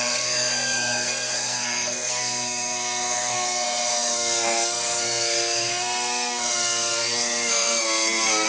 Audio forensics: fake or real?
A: fake